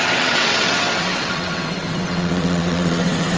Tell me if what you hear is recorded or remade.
remade